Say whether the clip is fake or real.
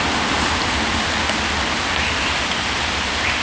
real